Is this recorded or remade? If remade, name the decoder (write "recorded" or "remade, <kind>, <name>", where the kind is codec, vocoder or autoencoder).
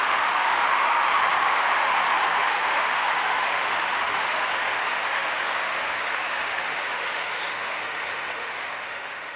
remade, autoencoder, DAC-VAE